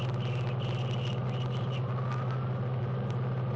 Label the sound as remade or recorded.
recorded